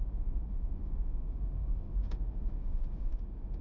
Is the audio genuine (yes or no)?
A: no